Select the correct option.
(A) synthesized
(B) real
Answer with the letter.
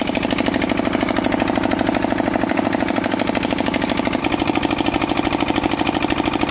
B